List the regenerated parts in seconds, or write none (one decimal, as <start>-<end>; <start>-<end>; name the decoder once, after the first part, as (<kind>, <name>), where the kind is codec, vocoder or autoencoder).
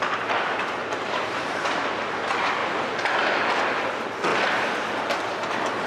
0.8-1.8 (vocoder, BigVGAN v2); 2.6-3.4